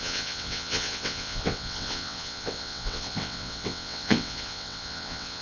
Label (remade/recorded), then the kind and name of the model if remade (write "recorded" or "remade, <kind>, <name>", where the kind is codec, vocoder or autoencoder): remade, vocoder, WaveNeXt